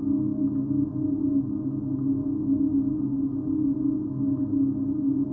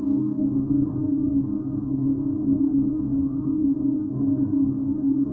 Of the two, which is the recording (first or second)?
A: first